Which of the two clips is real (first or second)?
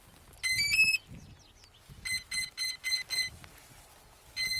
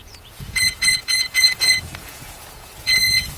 first